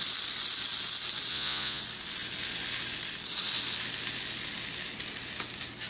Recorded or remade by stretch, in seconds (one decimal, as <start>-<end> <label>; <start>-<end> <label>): 0.0-1.3 recorded; 1.3-1.8 remade; 1.8-5.9 recorded